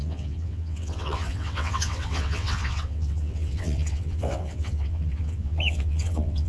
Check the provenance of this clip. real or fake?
fake